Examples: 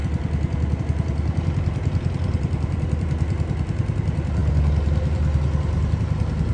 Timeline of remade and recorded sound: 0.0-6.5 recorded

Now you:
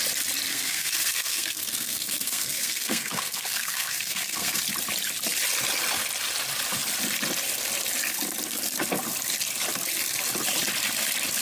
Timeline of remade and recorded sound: 0.0-0.5 recorded; 0.5-4.6 remade; 4.6-11.4 recorded

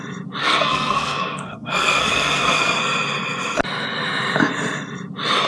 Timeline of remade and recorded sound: 0.0-0.4 recorded; 0.4-2.8 remade; 2.8-5.5 recorded

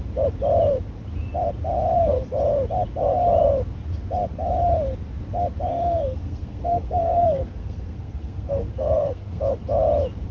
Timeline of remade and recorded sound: 0.0-5.7 recorded; 5.7-9.4 remade; 9.4-10.3 recorded

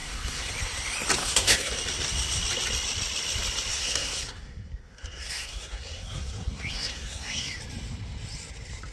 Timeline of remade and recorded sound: 0.0-0.5 remade; 0.5-1.2 recorded; 1.2-1.7 remade; 1.7-3.7 recorded; 3.7-7.6 remade; 7.6-8.9 recorded

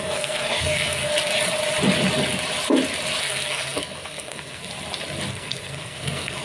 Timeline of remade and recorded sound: 0.0-1.0 remade; 1.0-3.2 recorded; 3.2-4.7 remade; 4.7-5.3 recorded; 5.3-6.4 remade